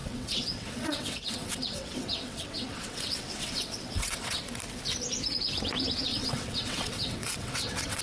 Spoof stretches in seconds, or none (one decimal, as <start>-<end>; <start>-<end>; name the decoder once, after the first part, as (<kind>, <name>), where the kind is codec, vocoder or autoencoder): 0.0-4.4 (vocoder, WaveNeXt); 6.1-8.0